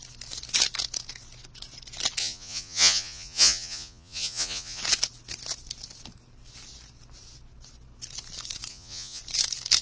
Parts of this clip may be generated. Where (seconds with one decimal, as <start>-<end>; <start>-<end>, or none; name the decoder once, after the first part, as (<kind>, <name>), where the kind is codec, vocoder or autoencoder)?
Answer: 2.2-4.8 (vocoder, Vocos); 8.7-9.2